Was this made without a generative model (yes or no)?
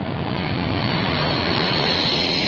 no